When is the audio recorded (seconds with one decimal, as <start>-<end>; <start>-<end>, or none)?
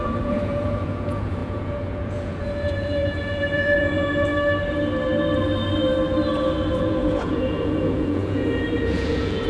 4.3-6.7